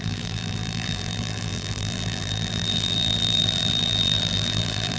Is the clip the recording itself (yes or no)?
no